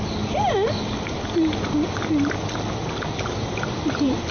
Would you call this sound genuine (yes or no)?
yes